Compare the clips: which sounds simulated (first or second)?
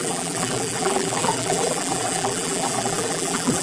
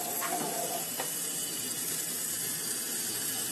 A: first